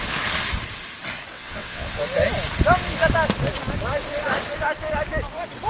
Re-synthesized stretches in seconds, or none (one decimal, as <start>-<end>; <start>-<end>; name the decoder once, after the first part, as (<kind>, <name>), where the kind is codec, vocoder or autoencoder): 1.3-2.0 (vocoder, WaveNeXt)